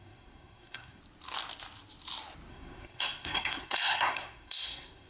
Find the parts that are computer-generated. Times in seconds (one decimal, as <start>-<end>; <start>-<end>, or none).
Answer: 0.0-1.0; 2.5-5.1